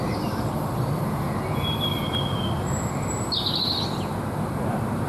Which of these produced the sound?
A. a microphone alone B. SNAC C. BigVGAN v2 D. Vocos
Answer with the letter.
A